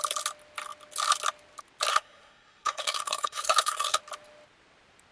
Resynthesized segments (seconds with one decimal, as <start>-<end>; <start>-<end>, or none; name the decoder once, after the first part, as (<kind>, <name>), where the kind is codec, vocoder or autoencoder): 1.9-4.0 (codec, SNAC)